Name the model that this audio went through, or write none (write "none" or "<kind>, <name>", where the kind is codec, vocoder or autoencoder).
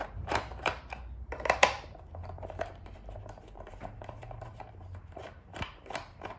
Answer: vocoder, BigVGAN v2